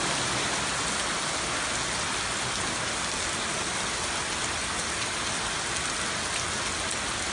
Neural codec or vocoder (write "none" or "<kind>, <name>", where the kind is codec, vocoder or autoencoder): none